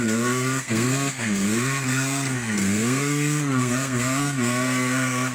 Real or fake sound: fake